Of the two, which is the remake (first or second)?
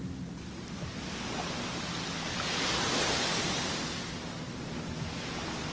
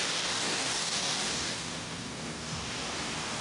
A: second